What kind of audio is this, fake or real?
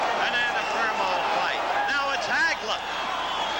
real